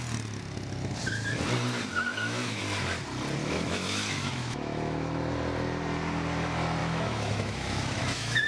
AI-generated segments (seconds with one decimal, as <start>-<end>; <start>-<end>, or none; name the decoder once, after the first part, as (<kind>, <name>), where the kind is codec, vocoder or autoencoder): 2.1-2.6 (autoencoder, DAC-VAE); 3.4-5.2; 6.8-8.5